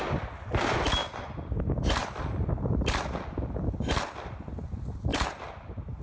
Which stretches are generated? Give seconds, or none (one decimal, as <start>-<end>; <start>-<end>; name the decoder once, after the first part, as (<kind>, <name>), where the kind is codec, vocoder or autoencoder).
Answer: none